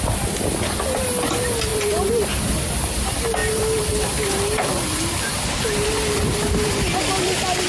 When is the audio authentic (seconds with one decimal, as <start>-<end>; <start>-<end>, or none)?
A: 0.0-1.7; 2.5-3.4; 7.0-7.7